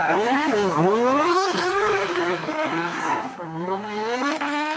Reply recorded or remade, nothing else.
remade